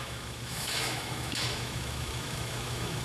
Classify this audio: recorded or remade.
remade